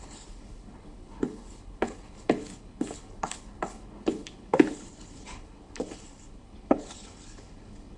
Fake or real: fake